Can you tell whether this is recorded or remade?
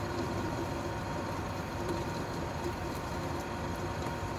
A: remade